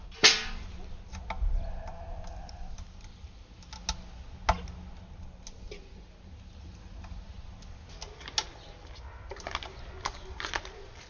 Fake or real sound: real